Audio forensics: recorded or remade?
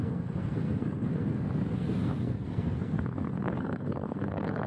remade